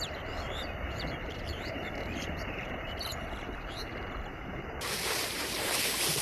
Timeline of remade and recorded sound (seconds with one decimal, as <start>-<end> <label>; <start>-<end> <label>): 0.0-6.2 remade